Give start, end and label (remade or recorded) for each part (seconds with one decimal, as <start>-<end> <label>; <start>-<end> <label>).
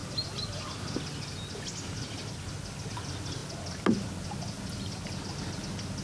0.0-6.0 recorded